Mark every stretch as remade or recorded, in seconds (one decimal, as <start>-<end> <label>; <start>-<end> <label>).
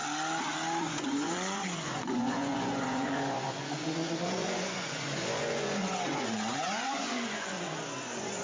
0.0-0.8 recorded; 0.8-8.4 remade